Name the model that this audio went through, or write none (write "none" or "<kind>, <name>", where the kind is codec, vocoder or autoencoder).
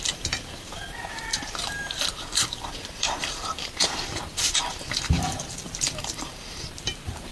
vocoder, BigVGAN v2